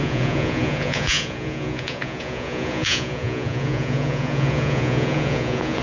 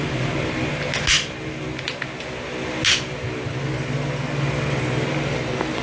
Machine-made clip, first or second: first